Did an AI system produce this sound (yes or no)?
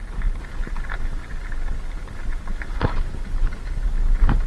no